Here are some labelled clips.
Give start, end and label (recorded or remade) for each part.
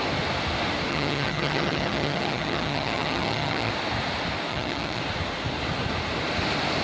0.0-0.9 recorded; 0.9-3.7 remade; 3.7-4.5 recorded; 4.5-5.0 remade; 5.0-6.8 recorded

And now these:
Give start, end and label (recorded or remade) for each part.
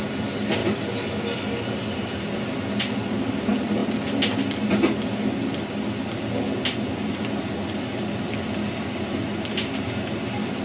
0.0-10.6 recorded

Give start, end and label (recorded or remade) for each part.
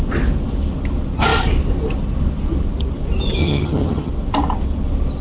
0.0-3.4 recorded; 3.4-4.1 remade; 4.1-5.2 recorded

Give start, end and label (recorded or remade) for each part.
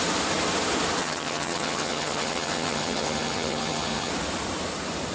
0.0-1.0 recorded; 1.0-4.1 remade; 4.1-5.1 recorded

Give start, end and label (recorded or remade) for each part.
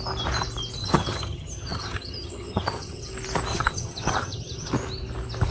0.0-0.8 recorded; 0.8-3.1 remade; 3.1-3.5 recorded; 3.5-4.7 remade; 4.7-5.5 recorded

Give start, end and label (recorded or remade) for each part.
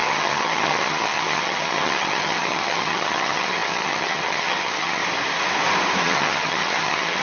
0.0-5.0 remade; 5.0-6.0 recorded; 6.0-7.2 remade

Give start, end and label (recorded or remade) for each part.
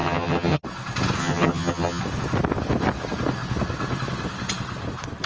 0.0-0.6 remade; 0.6-1.2 recorded; 1.2-2.0 remade; 2.0-5.3 recorded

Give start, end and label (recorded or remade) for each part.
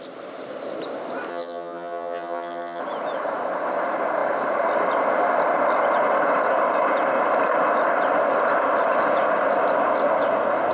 0.0-1.3 recorded; 1.3-2.8 remade; 2.8-10.7 recorded